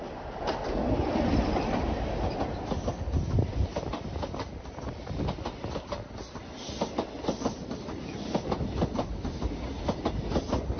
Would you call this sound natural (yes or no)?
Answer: yes